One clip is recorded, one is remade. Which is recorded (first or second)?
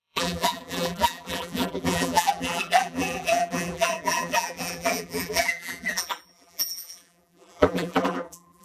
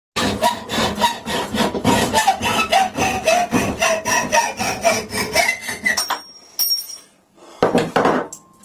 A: second